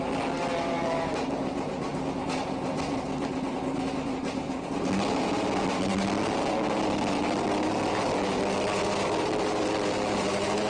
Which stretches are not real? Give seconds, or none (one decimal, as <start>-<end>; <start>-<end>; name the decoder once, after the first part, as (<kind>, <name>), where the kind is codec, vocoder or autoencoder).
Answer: none